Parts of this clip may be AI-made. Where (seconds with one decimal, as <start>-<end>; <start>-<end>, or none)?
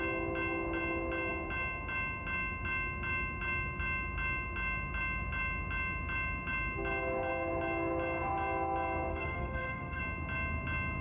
9.1-10.0